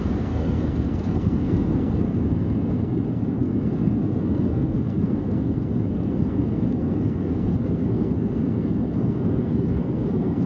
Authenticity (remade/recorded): remade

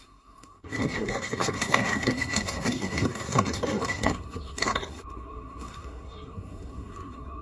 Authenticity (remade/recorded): remade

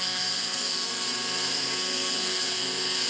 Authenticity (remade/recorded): remade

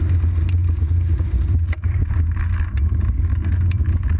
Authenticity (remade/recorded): recorded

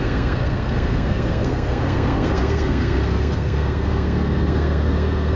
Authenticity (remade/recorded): remade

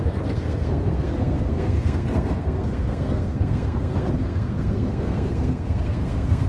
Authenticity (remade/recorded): remade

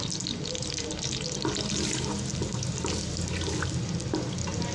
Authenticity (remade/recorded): recorded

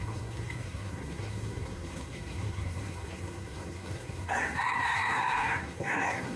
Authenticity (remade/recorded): remade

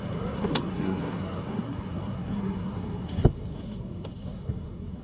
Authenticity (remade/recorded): remade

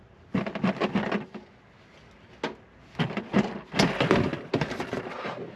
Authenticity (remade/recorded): recorded